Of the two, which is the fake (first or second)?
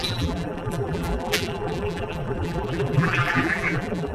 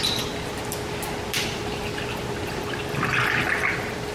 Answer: first